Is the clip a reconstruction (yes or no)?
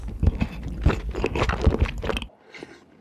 no